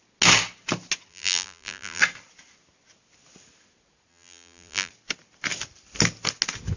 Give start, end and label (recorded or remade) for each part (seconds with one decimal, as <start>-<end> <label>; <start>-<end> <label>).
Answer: 0.0-1.1 recorded; 1.1-2.0 remade; 2.0-4.1 recorded; 4.1-4.9 remade; 4.9-6.8 recorded